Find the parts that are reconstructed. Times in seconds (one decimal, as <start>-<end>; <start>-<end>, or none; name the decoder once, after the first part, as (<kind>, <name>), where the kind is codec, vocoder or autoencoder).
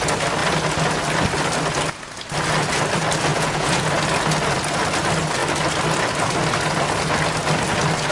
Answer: 3.3-3.9 (vocoder, Vocos)